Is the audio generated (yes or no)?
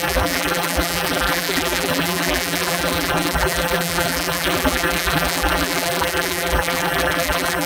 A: yes